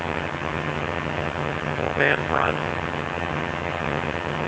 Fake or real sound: fake